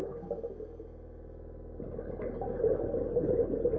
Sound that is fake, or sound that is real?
real